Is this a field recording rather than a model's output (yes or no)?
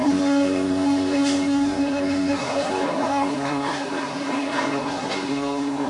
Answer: no